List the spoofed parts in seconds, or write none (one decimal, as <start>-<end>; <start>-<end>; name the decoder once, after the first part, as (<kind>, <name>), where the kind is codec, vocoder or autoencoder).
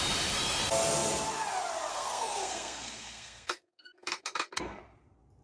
1.9-4.8 (codec, SNAC)